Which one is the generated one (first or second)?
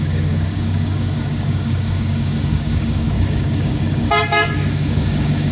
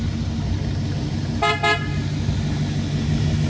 first